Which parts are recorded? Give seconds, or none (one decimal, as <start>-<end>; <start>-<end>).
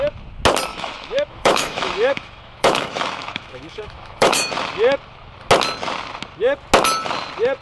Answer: 0.0-0.7; 4.5-7.6